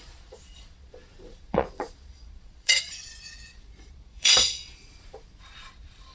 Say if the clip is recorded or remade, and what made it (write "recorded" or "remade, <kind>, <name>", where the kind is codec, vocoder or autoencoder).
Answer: remade, vocoder, Vocos